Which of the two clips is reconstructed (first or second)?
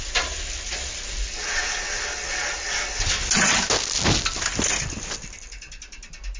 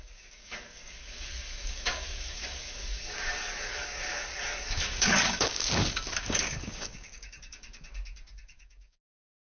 second